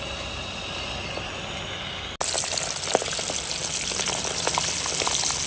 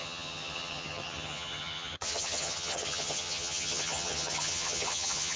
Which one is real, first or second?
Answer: first